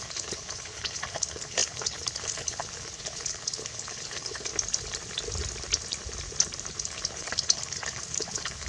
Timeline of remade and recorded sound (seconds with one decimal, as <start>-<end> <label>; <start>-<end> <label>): 0.0-4.5 remade; 4.5-6.8 recorded; 6.8-8.7 remade